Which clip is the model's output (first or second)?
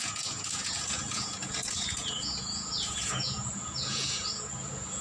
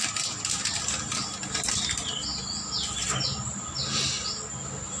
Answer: first